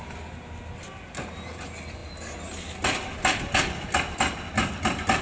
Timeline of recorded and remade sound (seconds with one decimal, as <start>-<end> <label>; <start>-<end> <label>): 0.0-5.2 recorded